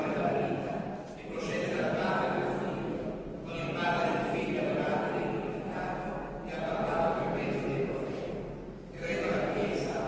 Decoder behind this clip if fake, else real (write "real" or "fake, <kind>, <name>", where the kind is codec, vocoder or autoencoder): real